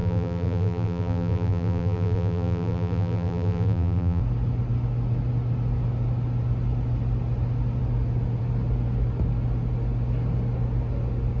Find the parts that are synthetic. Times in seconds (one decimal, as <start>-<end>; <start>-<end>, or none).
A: 0.0-4.2